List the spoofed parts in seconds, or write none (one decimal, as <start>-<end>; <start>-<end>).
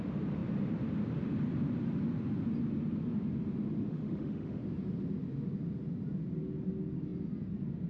3.9-4.6